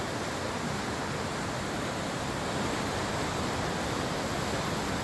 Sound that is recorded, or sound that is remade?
recorded